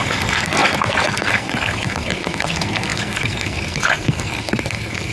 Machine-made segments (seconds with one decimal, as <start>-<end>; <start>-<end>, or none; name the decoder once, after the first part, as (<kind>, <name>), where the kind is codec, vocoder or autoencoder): 0.0-5.1 (codec, SNAC)